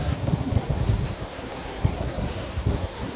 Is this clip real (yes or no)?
no